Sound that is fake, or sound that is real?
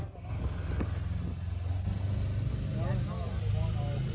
real